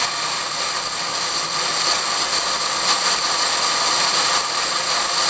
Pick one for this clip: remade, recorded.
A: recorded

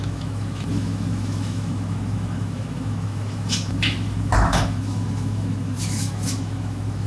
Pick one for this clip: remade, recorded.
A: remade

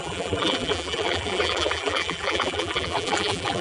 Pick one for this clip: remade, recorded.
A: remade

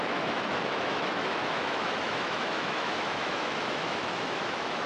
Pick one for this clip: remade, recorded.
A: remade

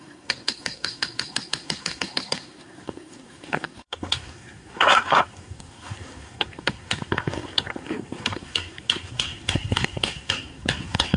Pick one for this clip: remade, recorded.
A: remade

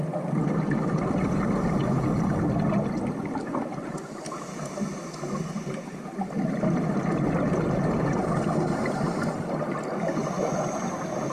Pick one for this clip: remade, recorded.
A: recorded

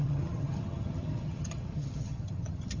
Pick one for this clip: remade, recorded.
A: remade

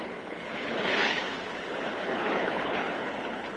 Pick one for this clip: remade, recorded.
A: remade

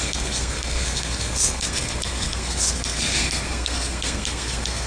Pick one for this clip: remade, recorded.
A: remade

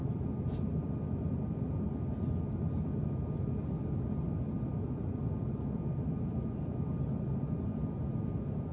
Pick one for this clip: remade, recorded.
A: recorded